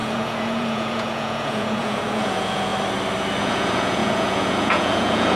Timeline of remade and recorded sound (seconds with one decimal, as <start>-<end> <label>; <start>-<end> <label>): 0.0-2.7 remade; 2.7-3.4 recorded; 3.4-5.4 remade